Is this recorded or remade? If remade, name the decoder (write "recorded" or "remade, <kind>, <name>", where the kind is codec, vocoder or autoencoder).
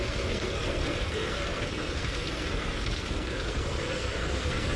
remade, codec, SNAC